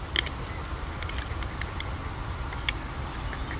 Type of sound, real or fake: real